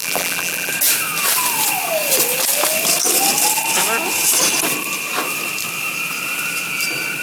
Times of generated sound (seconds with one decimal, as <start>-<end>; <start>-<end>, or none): 0.0-0.7